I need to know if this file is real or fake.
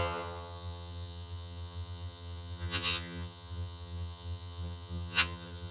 fake